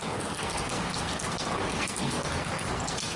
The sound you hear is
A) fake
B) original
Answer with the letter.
A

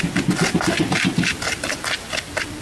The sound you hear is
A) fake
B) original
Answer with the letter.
B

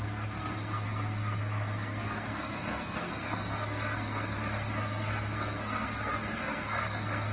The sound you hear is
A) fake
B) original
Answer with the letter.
A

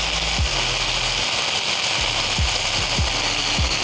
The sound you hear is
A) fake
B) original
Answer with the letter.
B